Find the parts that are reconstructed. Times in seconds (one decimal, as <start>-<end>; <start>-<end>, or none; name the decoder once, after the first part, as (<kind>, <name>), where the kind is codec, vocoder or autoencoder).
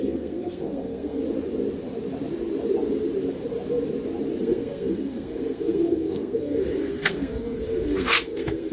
0.0-1.2 (codec, SNAC); 4.4-8.7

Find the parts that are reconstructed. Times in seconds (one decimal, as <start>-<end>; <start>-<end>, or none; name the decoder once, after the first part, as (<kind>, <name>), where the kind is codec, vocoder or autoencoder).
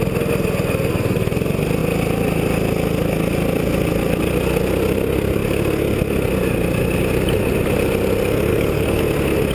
8.5-9.0 (codec, DAC)